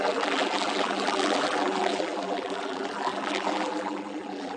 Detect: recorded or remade remade